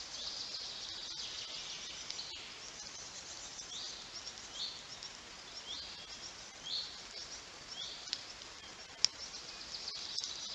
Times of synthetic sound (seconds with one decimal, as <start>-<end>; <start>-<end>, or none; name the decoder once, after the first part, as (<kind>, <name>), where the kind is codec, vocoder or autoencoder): none